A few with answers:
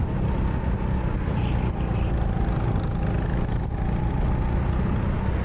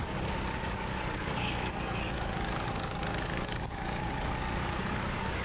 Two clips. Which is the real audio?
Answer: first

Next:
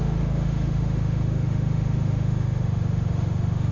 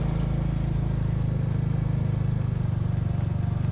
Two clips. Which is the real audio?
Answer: second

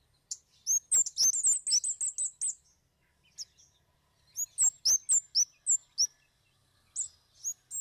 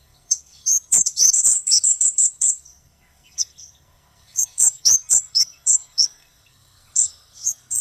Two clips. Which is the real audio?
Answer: first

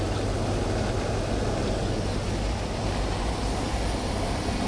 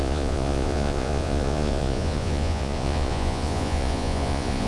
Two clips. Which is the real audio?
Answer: first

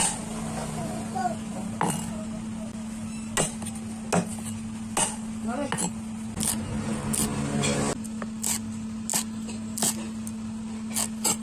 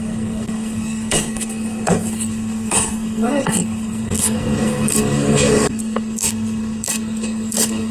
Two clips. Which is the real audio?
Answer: first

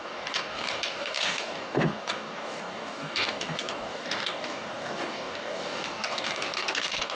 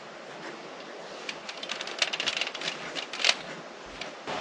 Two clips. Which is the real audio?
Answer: second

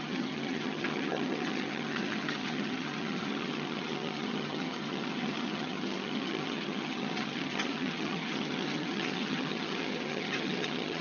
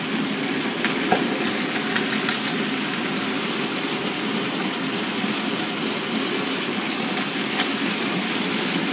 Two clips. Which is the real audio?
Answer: second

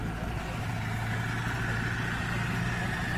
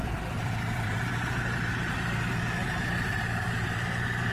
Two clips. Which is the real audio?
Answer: first